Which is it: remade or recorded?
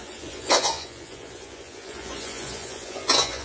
remade